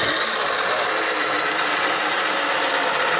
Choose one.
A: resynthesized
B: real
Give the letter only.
B